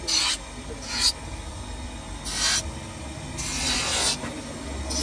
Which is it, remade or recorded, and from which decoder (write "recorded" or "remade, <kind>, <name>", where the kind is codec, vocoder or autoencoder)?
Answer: recorded